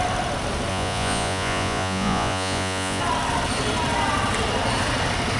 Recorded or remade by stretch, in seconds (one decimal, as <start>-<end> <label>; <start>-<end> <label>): 0.0-0.7 recorded; 0.7-3.0 remade; 3.0-5.4 recorded